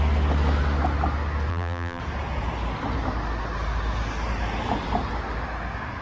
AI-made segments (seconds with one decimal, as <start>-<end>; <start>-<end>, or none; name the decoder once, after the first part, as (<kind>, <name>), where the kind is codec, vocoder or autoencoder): 1.5-2.0 (vocoder, BigVGAN v2)